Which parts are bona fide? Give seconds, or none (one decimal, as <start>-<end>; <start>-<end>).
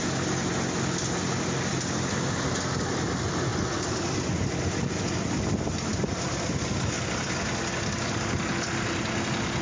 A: 0.0-9.6